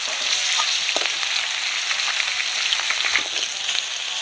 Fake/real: real